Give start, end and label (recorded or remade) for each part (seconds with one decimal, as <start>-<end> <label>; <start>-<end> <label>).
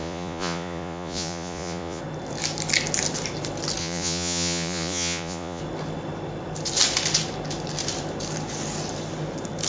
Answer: 0.0-2.0 remade; 2.0-3.8 recorded; 3.8-5.6 remade; 5.6-9.7 recorded